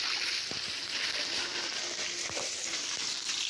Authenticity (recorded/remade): recorded